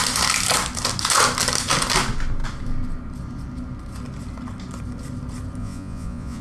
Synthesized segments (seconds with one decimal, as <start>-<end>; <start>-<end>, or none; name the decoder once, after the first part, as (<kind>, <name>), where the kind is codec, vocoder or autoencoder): 5.6-6.4 (vocoder, Vocos)